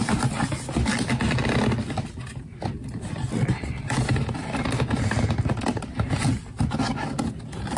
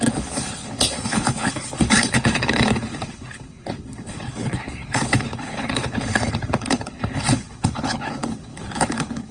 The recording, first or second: first